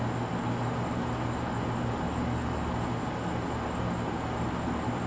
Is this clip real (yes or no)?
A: yes